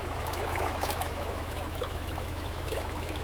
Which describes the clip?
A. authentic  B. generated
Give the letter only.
B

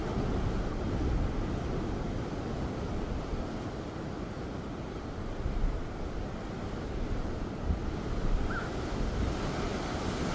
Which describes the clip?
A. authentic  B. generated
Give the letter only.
A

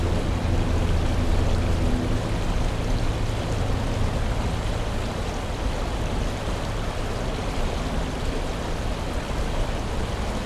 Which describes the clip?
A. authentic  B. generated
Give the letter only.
A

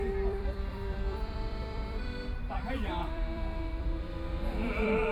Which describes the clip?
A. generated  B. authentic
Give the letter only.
A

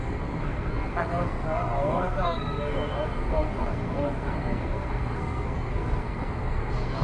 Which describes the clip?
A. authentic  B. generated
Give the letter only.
B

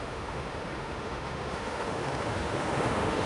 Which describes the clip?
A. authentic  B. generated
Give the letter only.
B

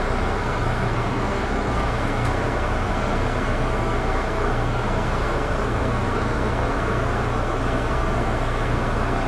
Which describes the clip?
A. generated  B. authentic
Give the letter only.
A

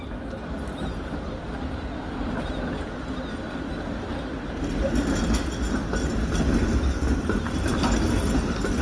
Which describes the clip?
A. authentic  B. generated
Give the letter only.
A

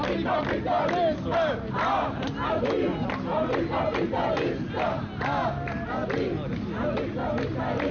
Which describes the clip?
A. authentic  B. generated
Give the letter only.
A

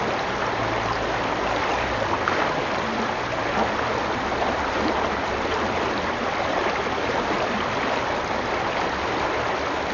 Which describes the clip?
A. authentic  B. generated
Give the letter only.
A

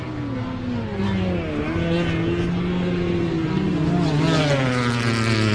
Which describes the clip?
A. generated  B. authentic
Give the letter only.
B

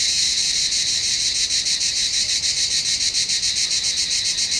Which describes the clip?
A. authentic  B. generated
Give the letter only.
B